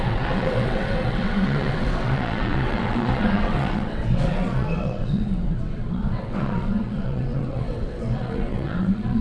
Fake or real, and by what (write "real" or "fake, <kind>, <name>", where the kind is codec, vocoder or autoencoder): fake, vocoder, WaveNeXt